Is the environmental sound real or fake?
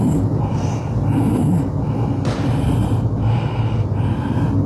real